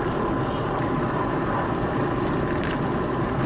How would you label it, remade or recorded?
recorded